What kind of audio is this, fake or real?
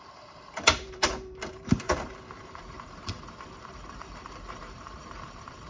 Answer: fake